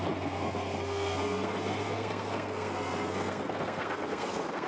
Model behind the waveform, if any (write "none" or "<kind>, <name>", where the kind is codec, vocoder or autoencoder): codec, SNAC